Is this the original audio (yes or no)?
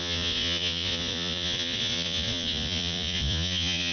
no